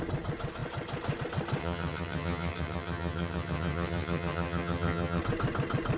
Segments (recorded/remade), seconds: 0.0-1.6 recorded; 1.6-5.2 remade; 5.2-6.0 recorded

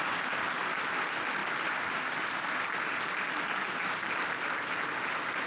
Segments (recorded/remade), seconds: 0.0-5.5 recorded

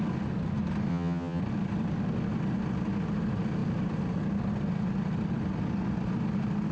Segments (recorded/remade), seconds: 0.0-0.9 recorded; 0.9-1.4 remade; 1.4-6.7 recorded

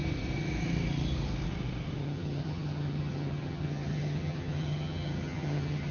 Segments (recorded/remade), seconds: 0.0-2.0 recorded; 2.0-5.9 remade

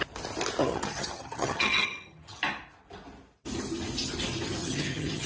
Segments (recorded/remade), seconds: 0.0-0.6 recorded; 0.6-2.4 remade; 2.4-4.6 recorded; 4.6-5.3 remade

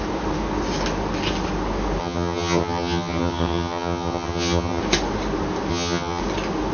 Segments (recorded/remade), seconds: 0.0-2.0 recorded; 2.0-4.8 remade; 4.8-5.7 recorded; 5.7-6.2 remade; 6.2-6.7 recorded

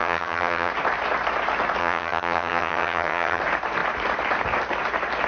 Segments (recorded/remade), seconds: 0.0-0.7 remade; 0.7-1.8 recorded; 1.8-3.4 remade; 3.4-5.3 recorded